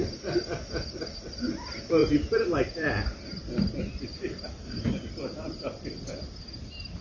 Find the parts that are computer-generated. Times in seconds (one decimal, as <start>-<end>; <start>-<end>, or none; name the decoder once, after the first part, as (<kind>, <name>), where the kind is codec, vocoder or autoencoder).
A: 2.0-5.8 (vocoder, BigVGAN v2)